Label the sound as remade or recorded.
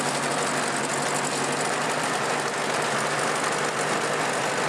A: recorded